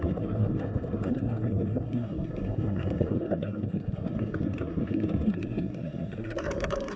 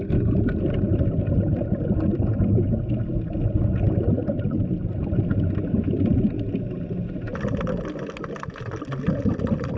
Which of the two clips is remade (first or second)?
first